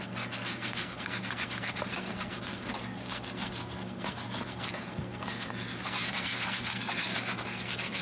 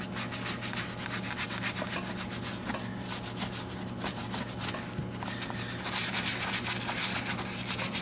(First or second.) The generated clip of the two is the first